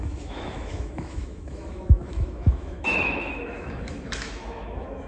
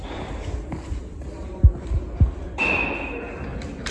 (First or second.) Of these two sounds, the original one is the second